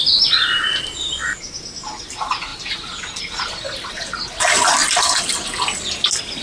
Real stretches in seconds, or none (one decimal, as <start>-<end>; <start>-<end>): 0.0-6.4